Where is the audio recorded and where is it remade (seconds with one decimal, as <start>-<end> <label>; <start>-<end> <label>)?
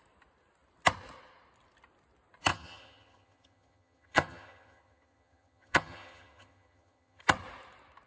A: 0.0-2.5 recorded; 2.5-7.2 remade; 7.2-8.1 recorded